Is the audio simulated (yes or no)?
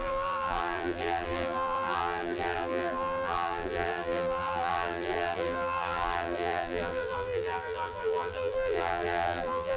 yes